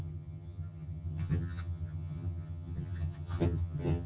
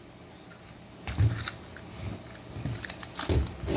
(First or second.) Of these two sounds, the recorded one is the second